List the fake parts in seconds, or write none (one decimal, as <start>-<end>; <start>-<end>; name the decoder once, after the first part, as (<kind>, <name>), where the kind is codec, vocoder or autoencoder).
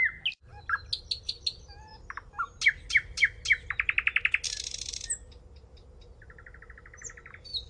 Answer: none